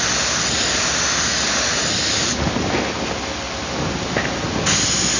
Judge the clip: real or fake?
real